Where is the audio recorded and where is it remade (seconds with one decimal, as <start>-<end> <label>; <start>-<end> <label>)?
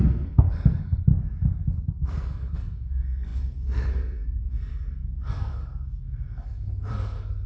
0.0-1.1 remade; 1.1-1.9 recorded; 1.9-7.5 remade